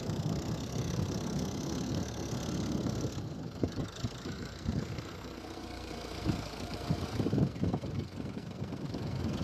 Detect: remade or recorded remade